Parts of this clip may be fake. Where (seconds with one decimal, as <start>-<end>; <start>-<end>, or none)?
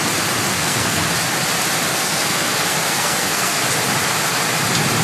0.5-1.1; 1.9-3.6